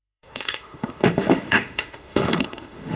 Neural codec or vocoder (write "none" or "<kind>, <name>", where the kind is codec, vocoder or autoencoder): autoencoder, DAC-VAE